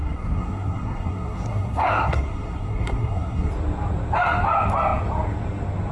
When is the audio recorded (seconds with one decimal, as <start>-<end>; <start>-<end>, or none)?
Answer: 3.5-5.9

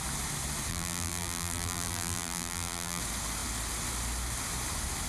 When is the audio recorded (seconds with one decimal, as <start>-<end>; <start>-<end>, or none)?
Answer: 0.0-0.7; 3.0-5.1

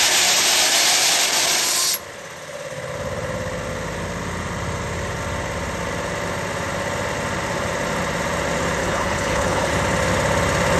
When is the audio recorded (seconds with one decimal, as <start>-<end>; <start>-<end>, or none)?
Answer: 0.0-8.8; 9.7-10.8

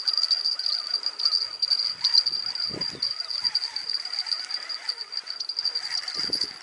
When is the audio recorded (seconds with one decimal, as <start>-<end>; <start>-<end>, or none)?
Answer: 0.0-3.8; 4.4-6.6